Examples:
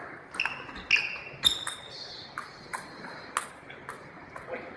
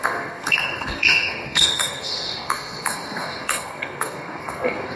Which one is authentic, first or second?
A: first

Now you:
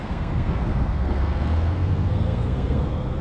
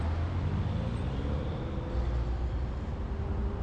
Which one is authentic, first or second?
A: second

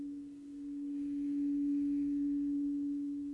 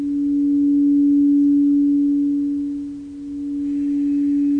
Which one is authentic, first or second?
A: second